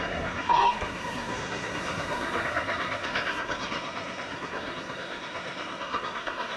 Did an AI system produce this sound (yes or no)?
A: yes